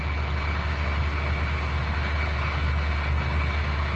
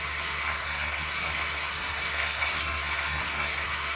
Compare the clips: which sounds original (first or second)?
first